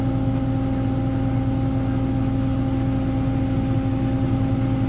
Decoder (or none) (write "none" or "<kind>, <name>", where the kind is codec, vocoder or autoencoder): none